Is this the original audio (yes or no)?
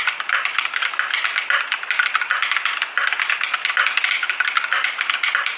yes